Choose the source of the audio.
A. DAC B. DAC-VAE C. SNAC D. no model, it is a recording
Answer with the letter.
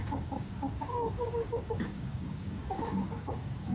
A